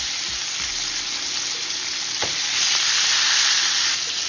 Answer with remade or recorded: recorded